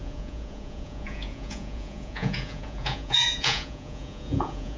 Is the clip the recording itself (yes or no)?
no